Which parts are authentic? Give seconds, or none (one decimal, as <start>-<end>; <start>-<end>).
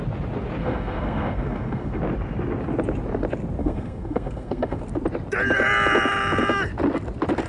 0.0-0.6; 2.0-3.6; 4.8-7.5